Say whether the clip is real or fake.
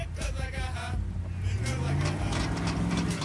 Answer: real